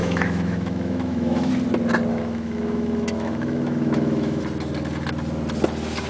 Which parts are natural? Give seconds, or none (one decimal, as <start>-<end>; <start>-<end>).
1.5-2.1; 4.4-6.1